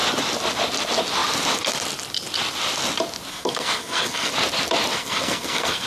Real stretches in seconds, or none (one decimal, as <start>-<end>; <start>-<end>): 0.0-3.3; 4.3-4.9